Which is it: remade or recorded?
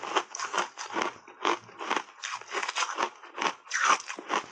recorded